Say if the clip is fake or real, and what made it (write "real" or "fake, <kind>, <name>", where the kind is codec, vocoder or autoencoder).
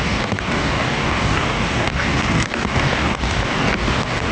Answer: fake, codec, DAC